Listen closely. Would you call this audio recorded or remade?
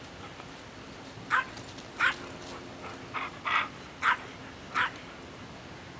recorded